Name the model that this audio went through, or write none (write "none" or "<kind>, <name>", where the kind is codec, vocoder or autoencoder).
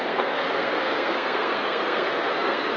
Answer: codec, SNAC